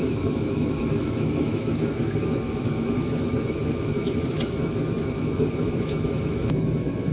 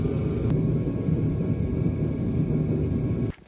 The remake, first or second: first